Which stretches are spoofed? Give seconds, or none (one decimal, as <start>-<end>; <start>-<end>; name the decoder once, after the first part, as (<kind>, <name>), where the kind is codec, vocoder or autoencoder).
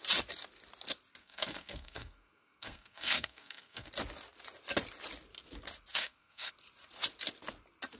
1.2-3.9 (codec, SNAC); 5.9-6.5